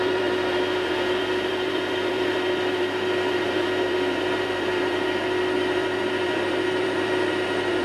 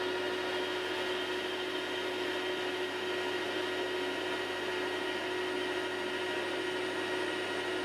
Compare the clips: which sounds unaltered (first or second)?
second